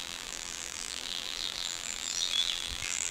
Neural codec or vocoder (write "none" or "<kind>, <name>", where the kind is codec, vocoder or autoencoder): vocoder, BigVGAN v2